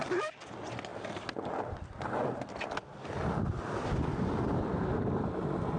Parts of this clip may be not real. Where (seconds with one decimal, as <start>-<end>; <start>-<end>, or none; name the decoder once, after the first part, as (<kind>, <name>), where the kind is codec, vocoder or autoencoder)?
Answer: none